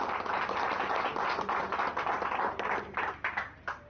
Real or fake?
real